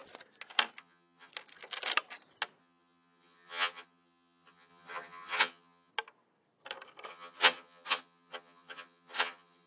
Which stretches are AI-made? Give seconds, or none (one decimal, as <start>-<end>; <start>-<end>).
0.8-1.3; 2.6-5.9; 7.1-9.7